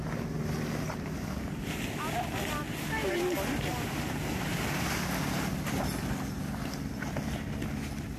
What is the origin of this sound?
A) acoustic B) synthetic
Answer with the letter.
A